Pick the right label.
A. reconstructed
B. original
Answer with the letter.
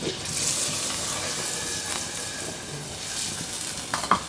B